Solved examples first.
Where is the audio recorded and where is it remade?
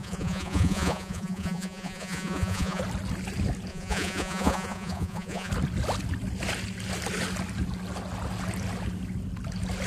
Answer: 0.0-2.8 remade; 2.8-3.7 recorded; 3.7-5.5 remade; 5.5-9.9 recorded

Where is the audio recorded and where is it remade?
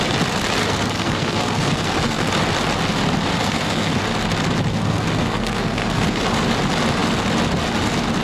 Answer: 0.0-0.6 recorded; 0.6-2.3 remade; 2.3-3.3 recorded; 3.3-3.9 remade; 3.9-4.7 recorded; 4.7-6.2 remade; 6.2-8.2 recorded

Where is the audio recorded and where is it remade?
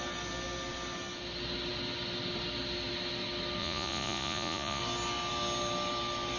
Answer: 0.0-3.6 recorded; 3.6-4.8 remade; 4.8-6.4 recorded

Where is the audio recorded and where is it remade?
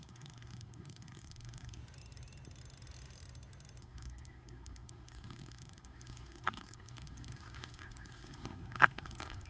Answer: 0.0-1.8 remade; 1.8-3.8 recorded; 3.8-9.5 remade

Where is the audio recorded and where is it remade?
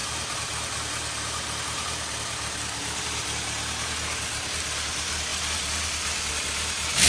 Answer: 0.0-7.1 recorded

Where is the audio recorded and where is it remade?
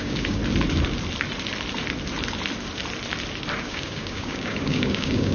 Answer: 0.0-0.4 remade; 0.4-3.6 recorded; 3.6-5.3 remade